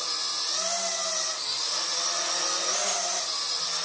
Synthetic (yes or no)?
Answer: no